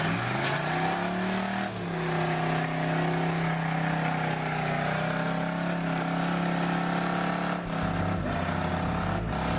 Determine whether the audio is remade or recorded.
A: recorded